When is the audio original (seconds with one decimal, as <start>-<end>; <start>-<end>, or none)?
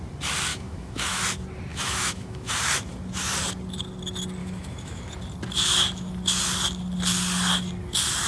0.0-0.5; 1.2-1.7; 2.5-4.4; 5.1-8.3